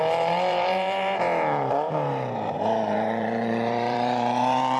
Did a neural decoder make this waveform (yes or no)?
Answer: yes